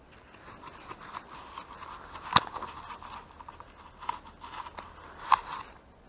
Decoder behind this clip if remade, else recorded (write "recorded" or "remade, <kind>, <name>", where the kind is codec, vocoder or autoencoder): recorded